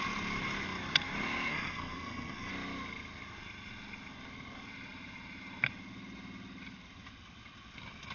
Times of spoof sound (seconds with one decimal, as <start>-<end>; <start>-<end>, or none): 1.5-2.5